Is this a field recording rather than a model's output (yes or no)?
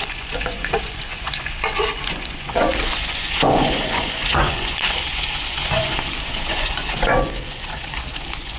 no